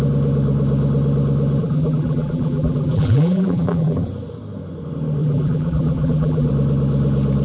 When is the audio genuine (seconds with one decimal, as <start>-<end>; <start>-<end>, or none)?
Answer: 0.0-1.6; 4.1-5.2; 6.5-7.4